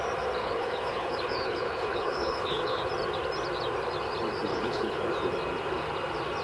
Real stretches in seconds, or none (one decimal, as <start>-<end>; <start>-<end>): 0.0-0.4; 2.8-4.5; 5.0-6.4